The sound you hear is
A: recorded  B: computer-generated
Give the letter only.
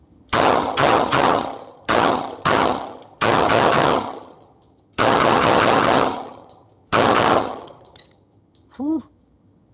B